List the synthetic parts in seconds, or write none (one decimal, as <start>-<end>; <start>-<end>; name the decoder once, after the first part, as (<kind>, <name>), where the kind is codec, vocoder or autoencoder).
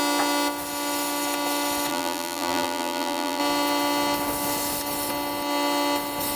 1.9-3.4 (vocoder, BigVGAN v2)